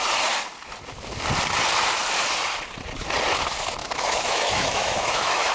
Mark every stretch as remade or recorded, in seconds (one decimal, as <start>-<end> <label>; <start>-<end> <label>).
0.0-3.8 recorded; 3.8-5.5 remade

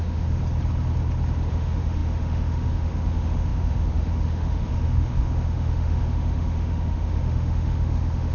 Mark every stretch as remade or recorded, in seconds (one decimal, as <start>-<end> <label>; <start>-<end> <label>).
0.0-0.4 remade; 0.4-1.5 recorded; 1.5-8.3 remade

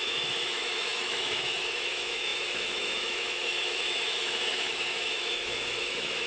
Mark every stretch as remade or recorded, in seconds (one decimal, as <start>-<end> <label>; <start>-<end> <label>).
0.0-6.3 remade

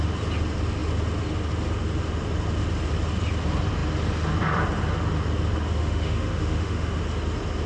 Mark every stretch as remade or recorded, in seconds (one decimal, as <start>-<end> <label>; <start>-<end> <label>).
0.0-5.8 recorded; 5.8-7.0 remade; 7.0-7.7 recorded

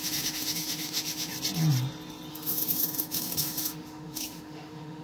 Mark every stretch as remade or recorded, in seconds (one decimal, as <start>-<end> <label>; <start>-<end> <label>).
0.0-1.3 remade; 1.3-2.3 recorded; 2.3-5.0 remade

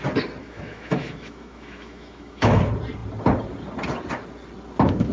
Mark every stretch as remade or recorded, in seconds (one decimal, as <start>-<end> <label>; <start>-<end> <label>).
0.0-0.4 recorded; 0.4-2.6 remade; 2.6-5.1 recorded